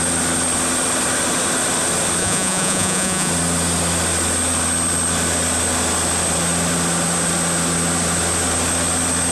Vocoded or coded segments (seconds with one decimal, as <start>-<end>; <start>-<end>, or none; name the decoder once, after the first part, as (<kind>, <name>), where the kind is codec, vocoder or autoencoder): 2.2-3.3 (vocoder, Vocos)